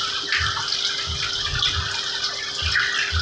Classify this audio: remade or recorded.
recorded